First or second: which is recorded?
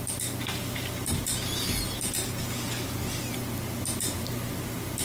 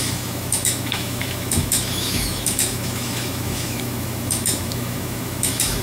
first